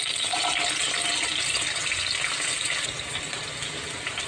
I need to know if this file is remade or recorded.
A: recorded